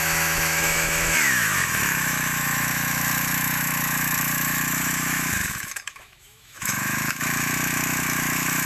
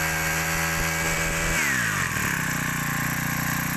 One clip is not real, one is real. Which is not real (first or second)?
first